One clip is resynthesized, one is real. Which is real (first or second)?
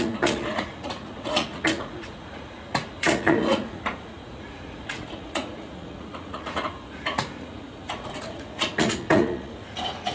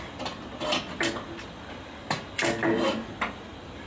second